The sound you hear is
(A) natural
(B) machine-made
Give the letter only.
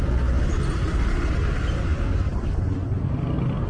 A